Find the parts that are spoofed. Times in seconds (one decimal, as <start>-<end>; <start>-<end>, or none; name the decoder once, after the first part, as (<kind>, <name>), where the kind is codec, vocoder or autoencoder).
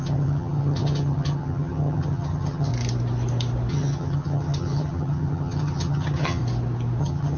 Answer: 0.0-2.7 (vocoder, HiFi-GAN); 3.7-6.4; 7.0-7.4